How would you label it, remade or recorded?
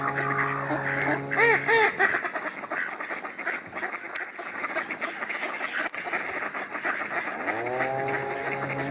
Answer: recorded